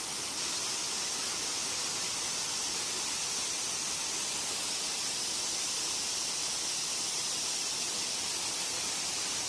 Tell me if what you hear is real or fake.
real